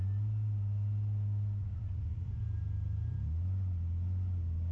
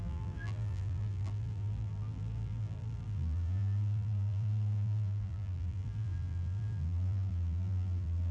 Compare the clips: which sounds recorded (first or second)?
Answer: first